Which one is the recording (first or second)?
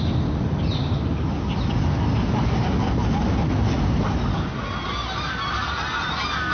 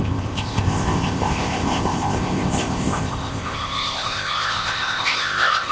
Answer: first